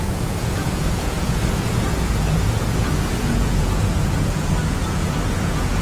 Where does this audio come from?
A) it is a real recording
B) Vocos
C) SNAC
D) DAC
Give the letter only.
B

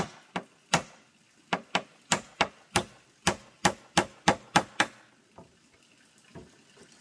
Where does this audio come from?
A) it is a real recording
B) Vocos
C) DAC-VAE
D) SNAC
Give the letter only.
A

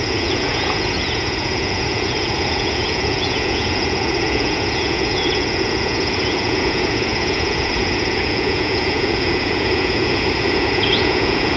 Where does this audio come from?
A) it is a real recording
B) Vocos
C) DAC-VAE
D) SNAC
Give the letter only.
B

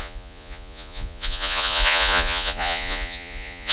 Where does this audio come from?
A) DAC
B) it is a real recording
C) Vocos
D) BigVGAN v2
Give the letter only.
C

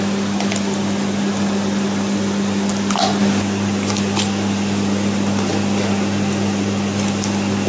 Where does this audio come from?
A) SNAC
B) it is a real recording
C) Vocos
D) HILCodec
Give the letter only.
B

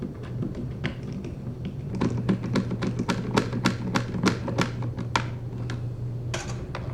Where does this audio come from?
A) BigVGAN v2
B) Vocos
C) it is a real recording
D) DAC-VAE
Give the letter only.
C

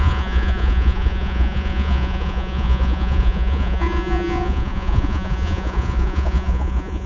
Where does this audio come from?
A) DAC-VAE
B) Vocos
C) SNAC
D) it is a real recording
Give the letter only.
B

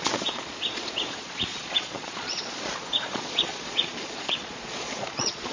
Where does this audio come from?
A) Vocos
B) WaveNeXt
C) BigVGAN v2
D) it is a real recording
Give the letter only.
A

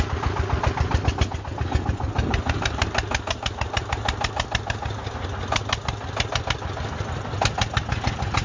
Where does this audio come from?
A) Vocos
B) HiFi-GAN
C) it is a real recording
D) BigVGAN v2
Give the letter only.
C